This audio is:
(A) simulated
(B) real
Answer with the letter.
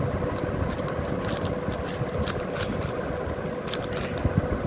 B